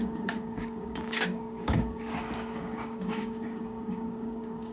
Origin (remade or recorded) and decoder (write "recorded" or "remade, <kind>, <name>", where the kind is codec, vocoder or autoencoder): remade, codec, DAC